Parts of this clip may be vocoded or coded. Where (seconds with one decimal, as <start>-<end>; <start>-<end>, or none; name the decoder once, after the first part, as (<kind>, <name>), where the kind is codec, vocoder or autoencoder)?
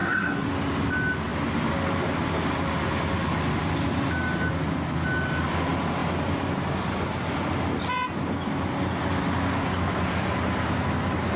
0.0-0.5 (codec, SNAC)